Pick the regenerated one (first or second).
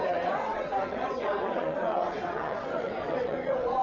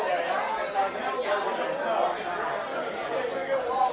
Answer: first